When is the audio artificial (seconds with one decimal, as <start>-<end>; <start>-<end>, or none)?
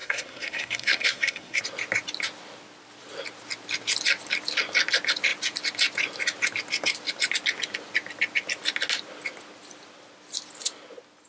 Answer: 0.0-1.6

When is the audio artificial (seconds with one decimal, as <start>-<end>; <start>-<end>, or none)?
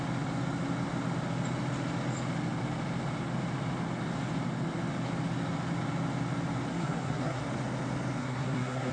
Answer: 6.7-7.4; 8.2-8.9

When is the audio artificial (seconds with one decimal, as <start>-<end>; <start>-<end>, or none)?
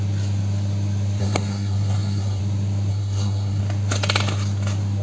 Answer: 1.2-2.4; 2.9-3.6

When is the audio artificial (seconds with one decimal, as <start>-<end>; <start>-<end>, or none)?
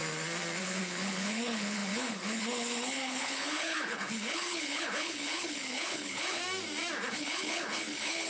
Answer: 0.6-6.4; 7.1-8.3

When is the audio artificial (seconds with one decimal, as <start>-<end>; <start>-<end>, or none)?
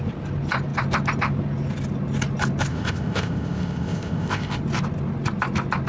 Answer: 2.7-4.6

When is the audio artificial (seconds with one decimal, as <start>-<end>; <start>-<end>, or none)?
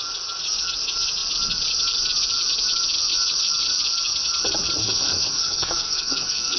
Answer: 4.8-6.6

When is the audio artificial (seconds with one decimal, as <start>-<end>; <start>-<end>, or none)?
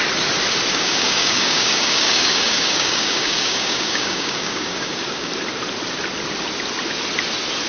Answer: 0.7-5.3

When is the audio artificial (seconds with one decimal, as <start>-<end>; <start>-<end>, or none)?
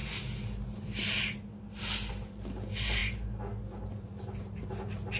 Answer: none